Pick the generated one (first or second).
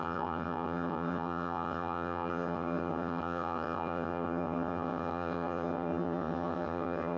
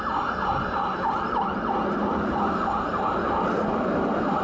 first